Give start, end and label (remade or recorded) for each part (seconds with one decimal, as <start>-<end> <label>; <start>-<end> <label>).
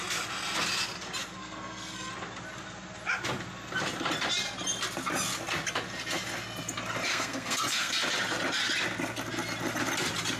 0.0-1.4 recorded; 1.4-2.1 remade; 2.1-7.1 recorded; 7.1-7.9 remade; 7.9-10.4 recorded